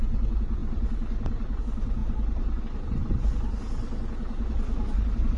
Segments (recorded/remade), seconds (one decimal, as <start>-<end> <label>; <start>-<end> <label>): 0.0-5.4 recorded